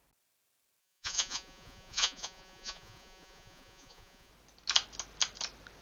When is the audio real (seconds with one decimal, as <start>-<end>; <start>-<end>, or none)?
0.0-0.8; 4.3-5.8